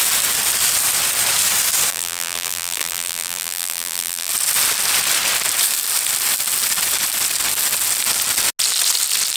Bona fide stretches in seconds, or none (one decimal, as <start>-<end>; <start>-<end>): 0.0-1.9; 4.3-9.4